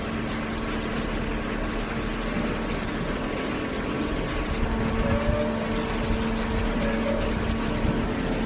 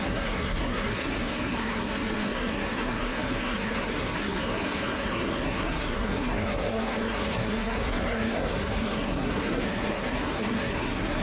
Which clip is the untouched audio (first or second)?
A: first